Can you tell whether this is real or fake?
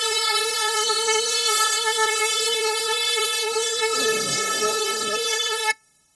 fake